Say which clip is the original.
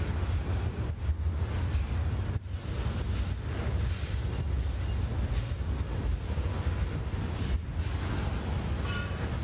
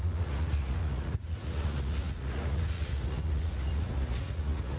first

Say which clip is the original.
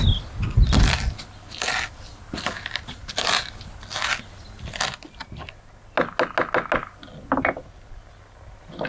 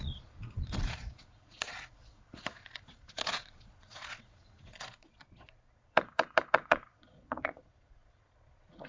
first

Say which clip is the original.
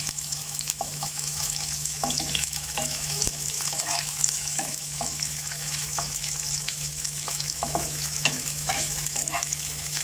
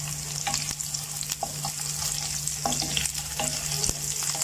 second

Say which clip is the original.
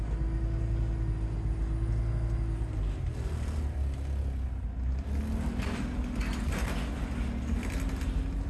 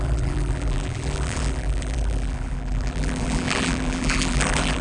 first